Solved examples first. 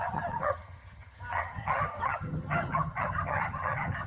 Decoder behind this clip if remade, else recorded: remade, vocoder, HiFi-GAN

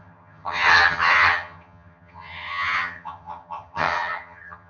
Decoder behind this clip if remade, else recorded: remade, vocoder, HiFi-GAN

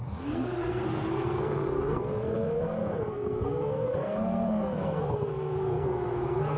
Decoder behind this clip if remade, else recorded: remade, codec, SNAC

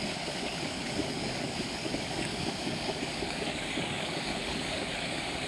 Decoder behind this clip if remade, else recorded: remade, codec, DAC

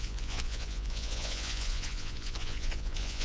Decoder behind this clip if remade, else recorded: remade, vocoder, Vocos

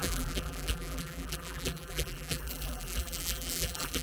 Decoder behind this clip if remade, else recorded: remade, vocoder, BigVGAN v2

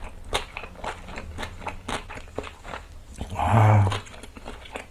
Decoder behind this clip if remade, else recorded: recorded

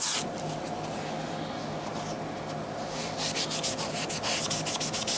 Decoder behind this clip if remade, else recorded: recorded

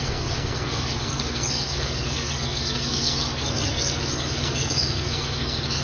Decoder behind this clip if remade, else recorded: remade, codec, SNAC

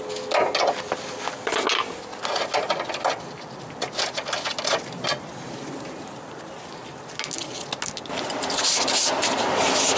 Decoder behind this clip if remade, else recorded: recorded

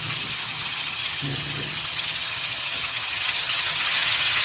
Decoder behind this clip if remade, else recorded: remade, vocoder, HiFi-GAN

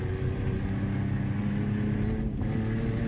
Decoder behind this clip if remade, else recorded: recorded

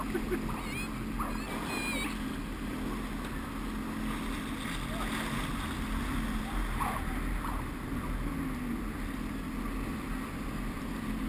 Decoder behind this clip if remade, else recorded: recorded